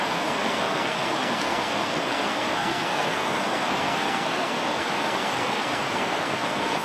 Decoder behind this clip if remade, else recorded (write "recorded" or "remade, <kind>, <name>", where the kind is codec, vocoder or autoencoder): remade, codec, SNAC